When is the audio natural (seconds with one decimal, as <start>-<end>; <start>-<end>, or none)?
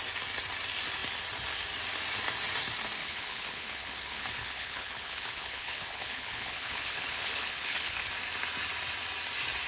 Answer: 0.0-3.0; 8.1-9.7